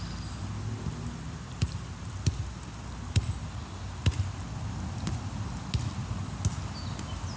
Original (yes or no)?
yes